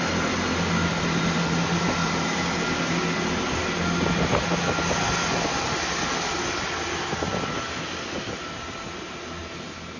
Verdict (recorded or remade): recorded